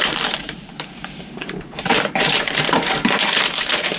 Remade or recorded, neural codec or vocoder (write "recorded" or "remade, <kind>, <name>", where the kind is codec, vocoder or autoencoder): remade, vocoder, BigVGAN v2